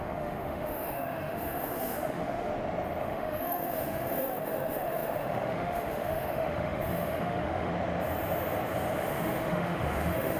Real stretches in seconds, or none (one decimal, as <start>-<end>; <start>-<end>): 2.5-3.0; 7.7-9.0